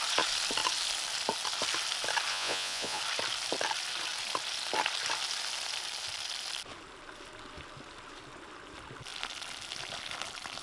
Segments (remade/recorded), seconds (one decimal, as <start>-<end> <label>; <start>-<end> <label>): 0.0-2.3 recorded; 2.3-3.0 remade; 3.0-10.6 recorded